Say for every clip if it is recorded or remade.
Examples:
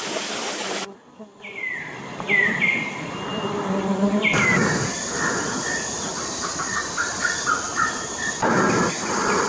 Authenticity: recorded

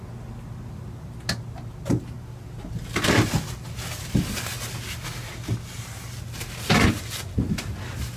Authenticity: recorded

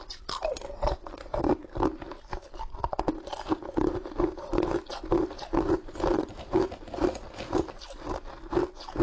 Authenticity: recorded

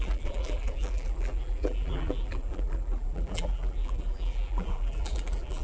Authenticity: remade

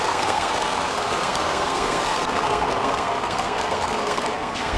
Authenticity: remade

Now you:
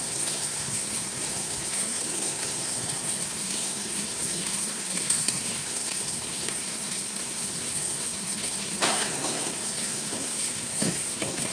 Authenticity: remade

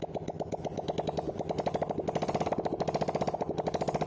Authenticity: recorded